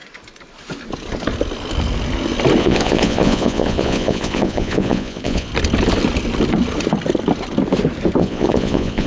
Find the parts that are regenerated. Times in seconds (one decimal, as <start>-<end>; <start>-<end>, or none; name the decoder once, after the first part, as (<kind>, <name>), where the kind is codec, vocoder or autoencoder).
2.6-5.5 (vocoder, Vocos); 8.2-9.1